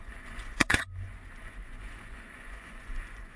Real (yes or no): no